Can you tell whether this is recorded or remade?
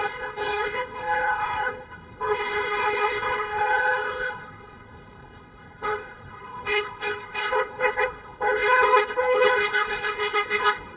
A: remade